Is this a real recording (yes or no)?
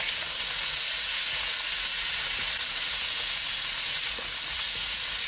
no